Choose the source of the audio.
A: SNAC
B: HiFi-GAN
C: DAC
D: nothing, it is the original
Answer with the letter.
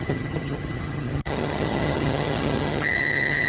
B